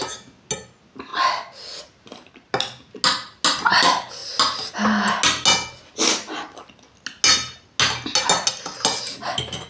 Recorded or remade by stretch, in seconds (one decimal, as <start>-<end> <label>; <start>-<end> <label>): 0.0-9.7 recorded

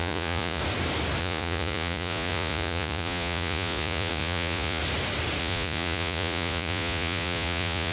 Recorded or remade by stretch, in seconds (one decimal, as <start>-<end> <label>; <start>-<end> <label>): 0.0-0.6 remade; 0.6-1.2 recorded; 1.2-4.8 remade; 4.8-5.4 recorded; 5.4-7.9 remade

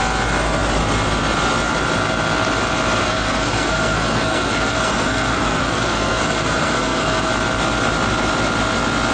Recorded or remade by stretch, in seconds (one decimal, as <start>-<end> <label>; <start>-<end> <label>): 0.0-3.0 recorded; 3.0-7.3 remade; 7.3-9.1 recorded